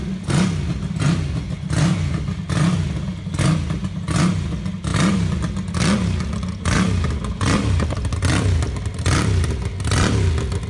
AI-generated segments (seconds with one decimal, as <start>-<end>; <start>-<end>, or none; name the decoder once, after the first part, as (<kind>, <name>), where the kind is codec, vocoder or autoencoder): none